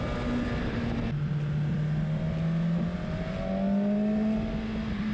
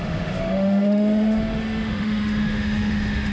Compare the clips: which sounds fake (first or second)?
second